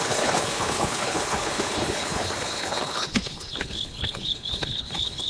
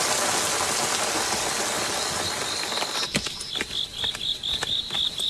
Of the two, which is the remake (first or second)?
first